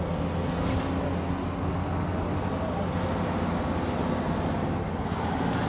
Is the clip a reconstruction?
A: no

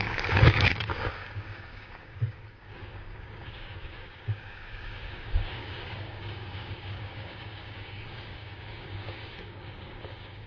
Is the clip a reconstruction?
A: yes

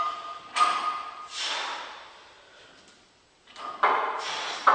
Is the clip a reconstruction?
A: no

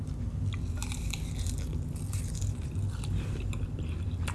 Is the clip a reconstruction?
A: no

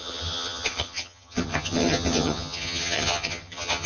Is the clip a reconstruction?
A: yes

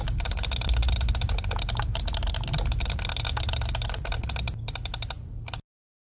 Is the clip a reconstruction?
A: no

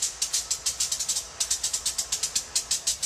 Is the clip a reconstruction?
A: no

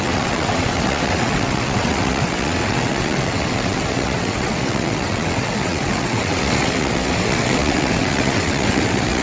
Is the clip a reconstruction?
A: yes